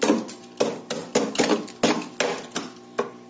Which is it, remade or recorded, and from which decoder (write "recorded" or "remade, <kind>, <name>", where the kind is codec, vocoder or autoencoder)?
recorded